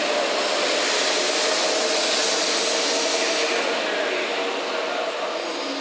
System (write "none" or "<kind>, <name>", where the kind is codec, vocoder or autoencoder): none